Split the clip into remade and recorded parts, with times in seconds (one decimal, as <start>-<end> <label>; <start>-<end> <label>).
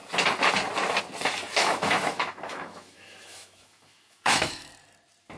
0.0-1.5 recorded; 1.5-4.7 remade; 4.7-5.4 recorded